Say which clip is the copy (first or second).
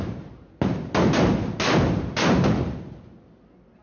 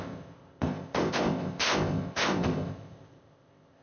second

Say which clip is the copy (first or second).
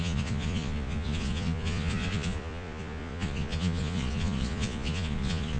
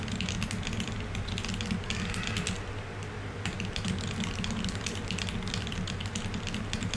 first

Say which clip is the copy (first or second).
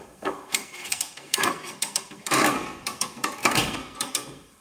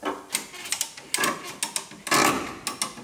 first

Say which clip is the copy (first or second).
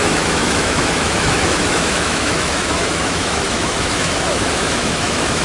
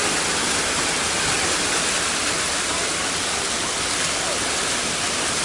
first